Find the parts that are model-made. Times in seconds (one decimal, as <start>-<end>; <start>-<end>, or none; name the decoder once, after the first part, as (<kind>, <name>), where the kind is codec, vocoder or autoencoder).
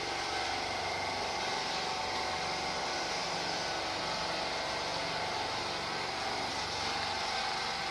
1.5-2.0 (vocoder, BigVGAN v2); 6.5-7.4